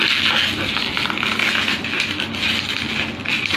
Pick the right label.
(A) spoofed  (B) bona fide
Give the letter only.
B